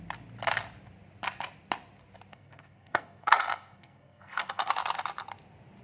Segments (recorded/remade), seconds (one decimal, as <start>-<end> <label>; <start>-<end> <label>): 0.0-2.3 recorded; 2.3-4.7 remade; 4.7-5.8 recorded

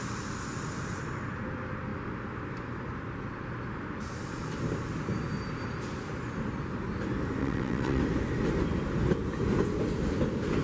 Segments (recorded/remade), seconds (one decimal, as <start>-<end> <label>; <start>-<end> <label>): 0.0-7.4 recorded; 7.4-8.0 remade; 8.0-10.6 recorded

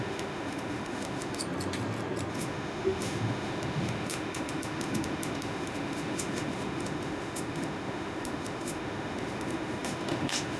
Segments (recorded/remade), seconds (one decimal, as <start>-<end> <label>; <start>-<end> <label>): 0.0-1.4 remade; 1.4-2.3 recorded; 2.3-10.6 remade

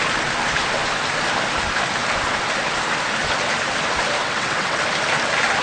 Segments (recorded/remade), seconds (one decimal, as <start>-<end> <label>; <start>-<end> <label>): 0.0-4.2 recorded; 4.2-4.8 remade; 4.8-5.6 recorded

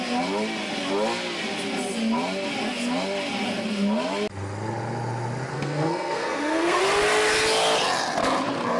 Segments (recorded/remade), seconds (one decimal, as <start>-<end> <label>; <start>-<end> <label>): 0.0-5.5 recorded; 5.5-6.8 remade; 6.8-8.8 recorded

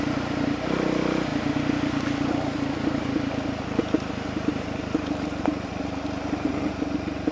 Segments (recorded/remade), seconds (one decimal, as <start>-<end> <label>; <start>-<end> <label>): 0.0-7.3 recorded

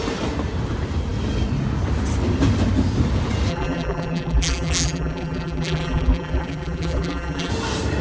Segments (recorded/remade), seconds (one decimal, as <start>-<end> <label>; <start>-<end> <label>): 0.0-3.5 recorded; 3.5-7.5 remade; 7.5-8.0 recorded

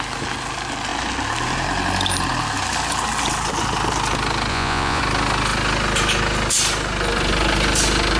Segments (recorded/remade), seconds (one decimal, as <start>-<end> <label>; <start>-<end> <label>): 0.0-4.5 recorded; 4.5-5.0 remade; 5.0-8.2 recorded